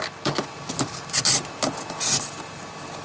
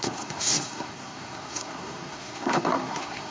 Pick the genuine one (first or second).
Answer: first